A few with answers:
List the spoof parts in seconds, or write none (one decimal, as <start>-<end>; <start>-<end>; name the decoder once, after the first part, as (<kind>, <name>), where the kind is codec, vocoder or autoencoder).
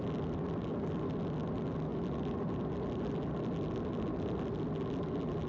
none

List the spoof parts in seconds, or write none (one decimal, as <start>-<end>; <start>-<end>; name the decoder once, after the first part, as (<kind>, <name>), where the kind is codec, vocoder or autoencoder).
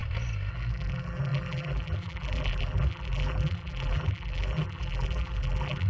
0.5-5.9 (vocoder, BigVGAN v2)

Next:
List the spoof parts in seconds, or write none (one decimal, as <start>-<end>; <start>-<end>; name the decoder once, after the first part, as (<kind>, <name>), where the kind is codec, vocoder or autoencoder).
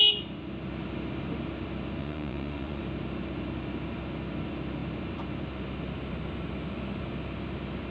2.0-2.8 (vocoder, Vocos)